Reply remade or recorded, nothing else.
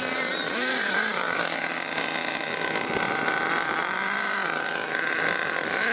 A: remade